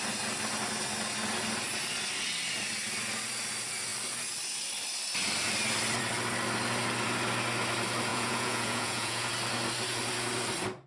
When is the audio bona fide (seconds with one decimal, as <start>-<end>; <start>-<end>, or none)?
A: 0.0-8.1; 9.3-10.9